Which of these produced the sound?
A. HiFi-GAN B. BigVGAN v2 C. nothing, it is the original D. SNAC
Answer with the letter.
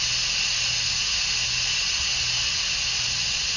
C